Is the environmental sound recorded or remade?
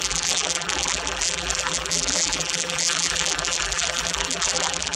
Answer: remade